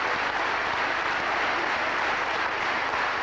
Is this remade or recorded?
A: recorded